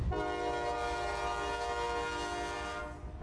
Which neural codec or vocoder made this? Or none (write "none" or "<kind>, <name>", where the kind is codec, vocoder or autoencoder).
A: none